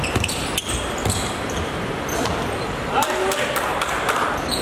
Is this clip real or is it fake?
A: fake